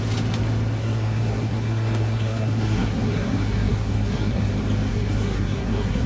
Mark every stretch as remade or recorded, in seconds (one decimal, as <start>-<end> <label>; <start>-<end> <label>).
0.0-0.8 recorded; 0.8-4.5 remade; 4.5-4.9 recorded; 4.9-6.1 remade